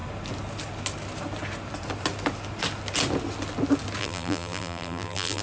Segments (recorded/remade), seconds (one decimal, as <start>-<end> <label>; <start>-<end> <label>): 0.0-4.0 recorded; 4.0-5.4 remade